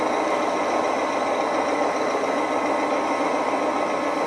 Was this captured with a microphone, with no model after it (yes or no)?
yes